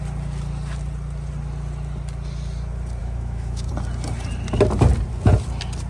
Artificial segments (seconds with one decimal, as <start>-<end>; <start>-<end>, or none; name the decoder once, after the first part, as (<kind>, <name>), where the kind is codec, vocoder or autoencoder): 3.0-3.7 (autoencoder, DAC-VAE)